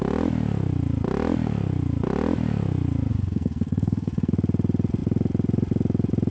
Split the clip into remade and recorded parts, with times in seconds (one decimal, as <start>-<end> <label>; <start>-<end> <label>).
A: 0.0-3.1 recorded; 3.1-4.3 remade; 4.3-6.3 recorded